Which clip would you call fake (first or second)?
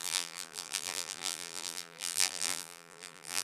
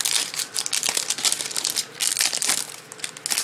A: first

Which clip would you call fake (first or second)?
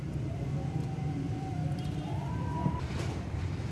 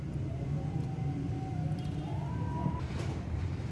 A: first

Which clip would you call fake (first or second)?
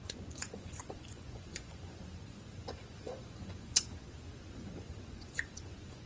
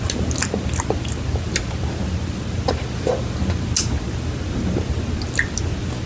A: first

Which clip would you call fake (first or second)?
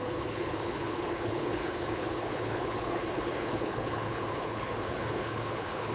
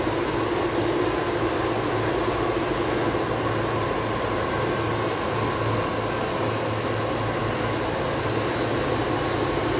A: first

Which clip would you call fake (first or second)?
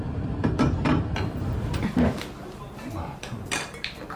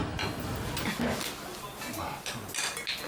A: first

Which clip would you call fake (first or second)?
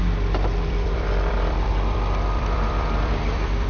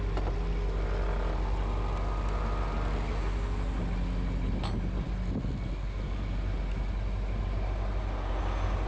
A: first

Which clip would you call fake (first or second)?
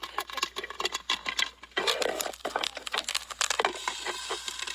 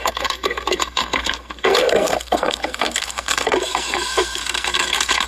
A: second